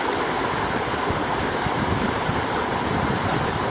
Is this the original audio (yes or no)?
no